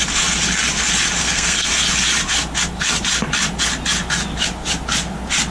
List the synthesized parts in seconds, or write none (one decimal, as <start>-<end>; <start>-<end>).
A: 1.2-1.7

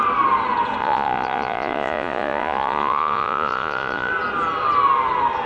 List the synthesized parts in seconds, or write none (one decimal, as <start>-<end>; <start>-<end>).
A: 0.8-4.1

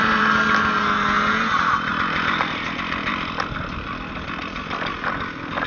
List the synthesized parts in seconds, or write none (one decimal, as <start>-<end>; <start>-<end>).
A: 0.0-0.8; 1.9-4.7

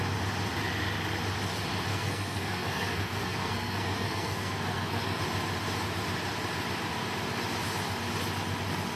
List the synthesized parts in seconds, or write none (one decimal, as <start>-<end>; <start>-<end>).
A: 1.9-5.2